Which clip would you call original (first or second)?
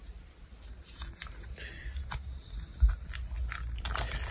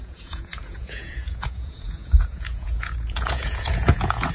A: first